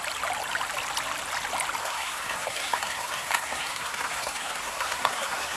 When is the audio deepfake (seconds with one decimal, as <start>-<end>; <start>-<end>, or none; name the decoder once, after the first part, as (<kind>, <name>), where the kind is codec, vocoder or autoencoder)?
1.8-5.6 (codec, SNAC)